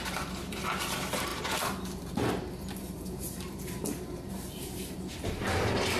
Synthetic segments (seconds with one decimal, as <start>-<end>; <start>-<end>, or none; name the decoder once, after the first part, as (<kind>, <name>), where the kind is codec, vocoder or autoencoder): none